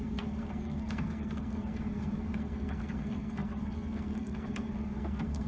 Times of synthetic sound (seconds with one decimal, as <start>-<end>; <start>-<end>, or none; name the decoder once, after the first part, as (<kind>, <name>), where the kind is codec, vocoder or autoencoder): 0.0-5.5 (codec, SNAC)